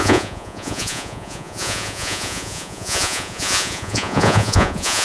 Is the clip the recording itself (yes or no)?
no